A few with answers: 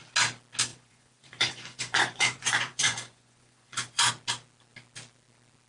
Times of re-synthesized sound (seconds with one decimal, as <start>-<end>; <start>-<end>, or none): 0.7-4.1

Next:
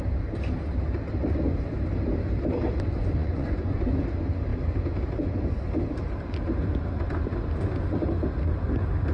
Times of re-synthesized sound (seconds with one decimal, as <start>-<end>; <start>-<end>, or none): 3.0-3.9

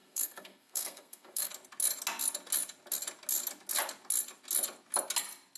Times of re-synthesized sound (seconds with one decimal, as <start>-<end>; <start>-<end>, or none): 0.0-1.5

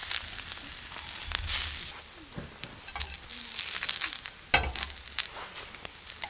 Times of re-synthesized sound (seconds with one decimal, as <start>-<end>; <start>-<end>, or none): none

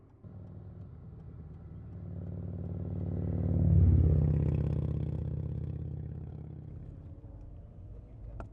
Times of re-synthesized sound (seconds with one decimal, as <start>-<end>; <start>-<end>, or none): 5.2-6.3

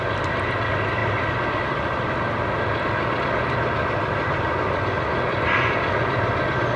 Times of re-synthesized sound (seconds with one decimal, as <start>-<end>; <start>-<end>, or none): none

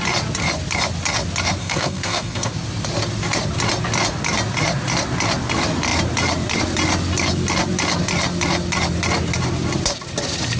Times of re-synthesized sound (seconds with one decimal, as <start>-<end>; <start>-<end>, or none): 1.6-2.5

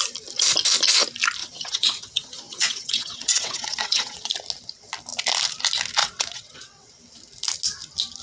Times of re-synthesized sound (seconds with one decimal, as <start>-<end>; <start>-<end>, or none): 1.4-4.3; 6.0-6.9